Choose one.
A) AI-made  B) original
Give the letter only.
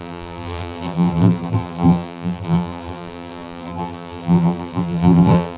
A